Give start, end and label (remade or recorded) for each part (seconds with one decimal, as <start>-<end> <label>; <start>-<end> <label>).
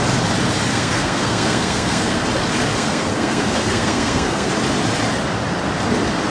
0.0-0.7 recorded; 0.7-2.2 remade; 2.2-2.7 recorded; 2.7-4.5 remade; 4.5-6.3 recorded